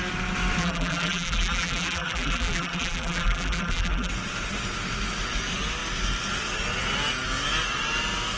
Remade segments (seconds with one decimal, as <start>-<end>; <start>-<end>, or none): 0.6-4.1